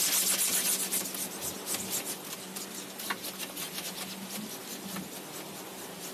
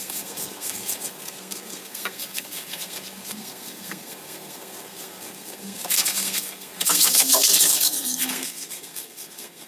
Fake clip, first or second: second